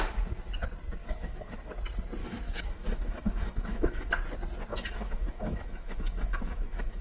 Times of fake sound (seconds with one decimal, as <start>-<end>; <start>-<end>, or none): 1.0-1.7; 2.2-4.1; 4.7-7.0